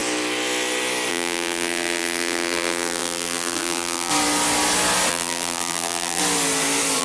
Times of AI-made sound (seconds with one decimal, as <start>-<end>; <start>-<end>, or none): 1.1-4.1; 5.1-6.2

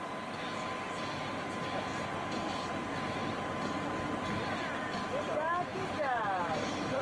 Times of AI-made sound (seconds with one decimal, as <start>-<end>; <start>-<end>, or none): 5.7-6.4

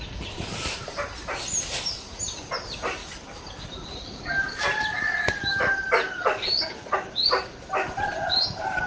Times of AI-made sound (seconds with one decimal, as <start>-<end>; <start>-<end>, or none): none

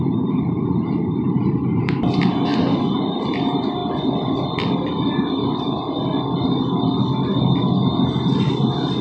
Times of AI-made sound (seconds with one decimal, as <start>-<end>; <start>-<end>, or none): 0.0-2.5; 3.1-3.8; 8.5-9.0

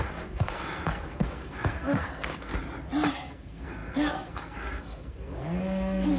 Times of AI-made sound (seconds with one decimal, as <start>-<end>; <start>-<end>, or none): 0.0-2.5; 3.1-6.2

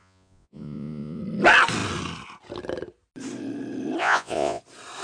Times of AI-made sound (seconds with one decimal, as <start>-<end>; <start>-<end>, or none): 0.0-1.2; 4.0-4.6

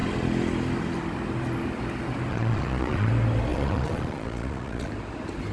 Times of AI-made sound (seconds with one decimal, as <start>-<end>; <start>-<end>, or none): 2.3-3.1; 3.5-4.9

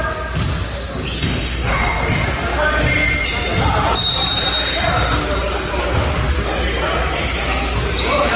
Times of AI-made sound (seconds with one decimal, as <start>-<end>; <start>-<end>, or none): 1.2-2.0